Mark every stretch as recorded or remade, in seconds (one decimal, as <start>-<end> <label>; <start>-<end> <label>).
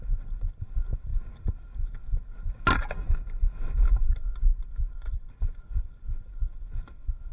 0.0-7.3 recorded